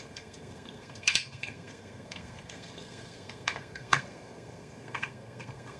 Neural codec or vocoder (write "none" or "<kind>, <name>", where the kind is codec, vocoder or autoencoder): codec, SNAC